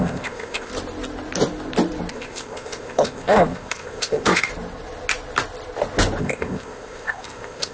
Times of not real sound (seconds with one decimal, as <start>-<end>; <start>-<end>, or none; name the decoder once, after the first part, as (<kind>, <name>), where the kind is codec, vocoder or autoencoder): 0.0-0.7 (codec, ZipCodec); 2.1-4.5; 6.2-7.7